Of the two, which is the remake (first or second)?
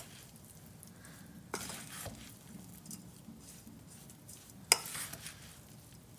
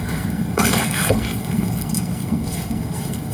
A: second